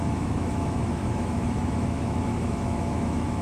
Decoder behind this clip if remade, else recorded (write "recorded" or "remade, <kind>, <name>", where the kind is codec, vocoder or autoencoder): remade, autoencoder, DAC-VAE